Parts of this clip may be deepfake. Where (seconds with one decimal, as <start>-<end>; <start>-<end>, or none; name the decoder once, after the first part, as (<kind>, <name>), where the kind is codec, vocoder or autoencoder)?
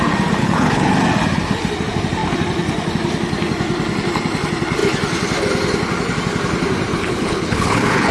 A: 0.4-0.9 (codec, HILCodec); 6.9-8.1